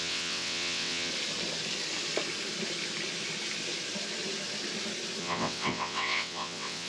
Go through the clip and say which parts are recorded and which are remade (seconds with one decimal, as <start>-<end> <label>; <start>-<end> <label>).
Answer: 0.0-1.1 remade; 1.1-5.2 recorded; 5.2-6.9 remade